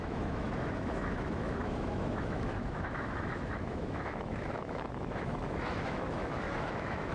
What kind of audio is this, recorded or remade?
remade